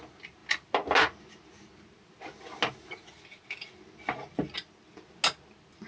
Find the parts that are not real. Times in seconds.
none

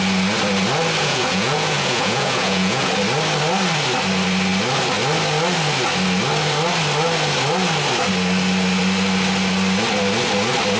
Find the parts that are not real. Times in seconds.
1.0-2.9 (vocoder, Vocos)